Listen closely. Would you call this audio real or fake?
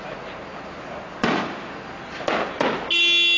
real